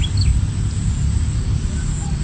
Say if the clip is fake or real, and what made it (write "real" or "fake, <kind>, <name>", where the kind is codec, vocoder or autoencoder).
real